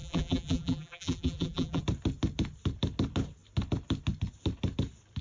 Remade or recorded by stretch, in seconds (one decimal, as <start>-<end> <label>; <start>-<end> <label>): 0.0-1.8 remade; 1.8-5.2 recorded